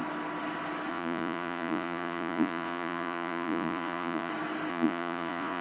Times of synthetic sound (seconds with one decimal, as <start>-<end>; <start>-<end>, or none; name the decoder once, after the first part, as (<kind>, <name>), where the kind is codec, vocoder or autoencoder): 0.9-4.3 (vocoder, Vocos); 4.7-5.6